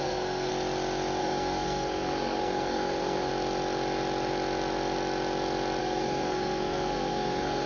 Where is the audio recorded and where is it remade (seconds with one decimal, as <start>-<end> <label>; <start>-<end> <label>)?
0.0-0.5 remade; 0.5-1.2 recorded; 1.2-3.3 remade; 3.3-5.8 recorded; 5.8-7.7 remade